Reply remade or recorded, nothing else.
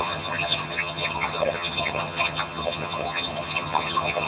remade